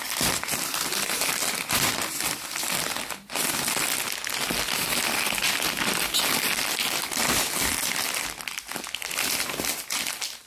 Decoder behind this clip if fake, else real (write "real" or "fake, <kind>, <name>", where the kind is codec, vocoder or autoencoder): real